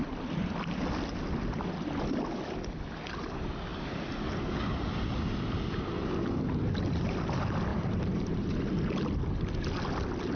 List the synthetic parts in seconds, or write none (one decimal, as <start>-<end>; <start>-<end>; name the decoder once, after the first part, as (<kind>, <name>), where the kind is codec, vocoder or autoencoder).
7.7-8.8 (vocoder, BigVGAN v2)